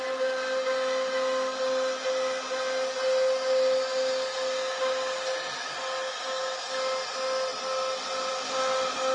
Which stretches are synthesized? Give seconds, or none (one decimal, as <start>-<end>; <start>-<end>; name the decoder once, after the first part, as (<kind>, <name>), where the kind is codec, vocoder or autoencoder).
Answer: none